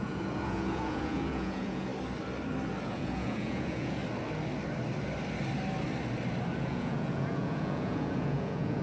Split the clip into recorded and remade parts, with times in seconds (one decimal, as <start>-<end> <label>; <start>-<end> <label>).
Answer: 0.0-1.9 remade; 1.9-2.8 recorded; 2.8-4.0 remade; 4.0-6.6 recorded; 6.6-8.8 remade